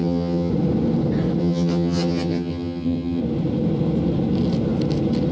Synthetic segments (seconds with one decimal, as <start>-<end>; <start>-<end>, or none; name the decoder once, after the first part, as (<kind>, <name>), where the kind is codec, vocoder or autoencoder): 0.0-0.5 (vocoder, HiFi-GAN); 1.4-3.2